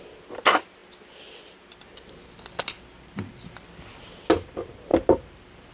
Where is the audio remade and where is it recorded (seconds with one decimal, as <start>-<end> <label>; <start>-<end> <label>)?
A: 0.0-5.7 recorded